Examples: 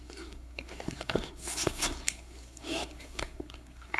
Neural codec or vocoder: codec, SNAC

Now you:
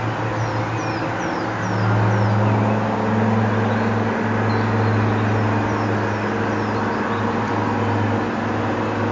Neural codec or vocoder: none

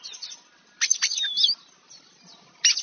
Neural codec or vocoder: none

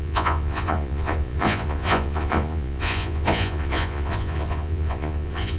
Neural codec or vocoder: vocoder, Vocos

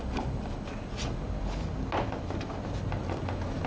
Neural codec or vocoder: none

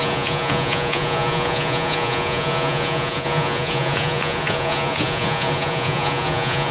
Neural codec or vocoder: vocoder, Vocos